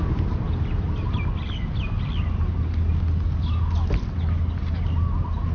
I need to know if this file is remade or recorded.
recorded